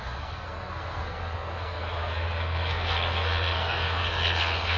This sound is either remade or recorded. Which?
remade